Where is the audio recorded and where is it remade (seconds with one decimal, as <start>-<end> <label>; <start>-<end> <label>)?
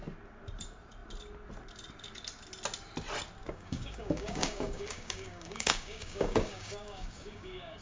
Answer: 0.0-3.4 recorded; 3.4-7.8 remade